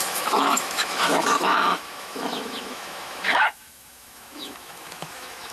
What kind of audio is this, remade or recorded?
remade